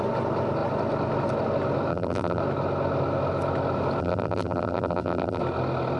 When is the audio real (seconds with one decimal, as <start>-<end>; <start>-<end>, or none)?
0.0-1.9; 2.4-4.0; 5.4-6.0